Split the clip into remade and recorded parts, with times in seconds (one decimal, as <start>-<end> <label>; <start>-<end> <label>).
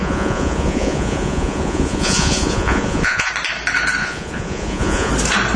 0.0-3.3 remade; 3.3-4.0 recorded; 4.0-5.1 remade; 5.1-5.6 recorded